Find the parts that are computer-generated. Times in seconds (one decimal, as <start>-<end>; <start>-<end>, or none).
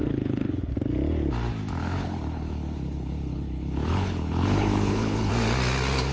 0.0-0.7; 1.8-5.3